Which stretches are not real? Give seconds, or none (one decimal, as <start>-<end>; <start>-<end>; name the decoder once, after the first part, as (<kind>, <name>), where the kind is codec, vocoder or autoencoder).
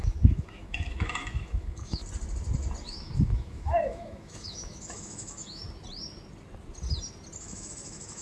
0.0-2.0 (autoencoder, DAC-VAE); 2.8-5.6; 7.4-8.2